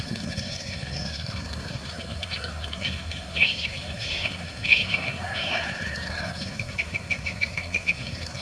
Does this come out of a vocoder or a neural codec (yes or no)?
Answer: yes